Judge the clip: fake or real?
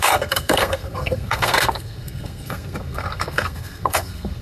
fake